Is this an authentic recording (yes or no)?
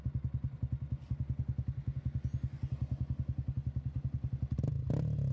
yes